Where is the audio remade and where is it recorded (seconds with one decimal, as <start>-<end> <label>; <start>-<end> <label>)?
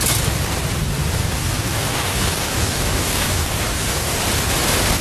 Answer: 0.0-1.2 recorded; 1.2-4.2 remade; 4.2-5.0 recorded